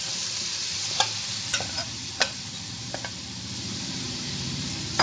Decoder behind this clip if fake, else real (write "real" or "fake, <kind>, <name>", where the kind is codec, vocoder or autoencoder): fake, vocoder, BigVGAN v2